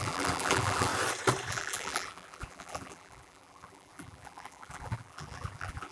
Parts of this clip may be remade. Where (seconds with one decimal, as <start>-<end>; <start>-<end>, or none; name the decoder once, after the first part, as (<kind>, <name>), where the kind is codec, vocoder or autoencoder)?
0.0-0.9 (vocoder, BigVGAN v2); 1.5-5.9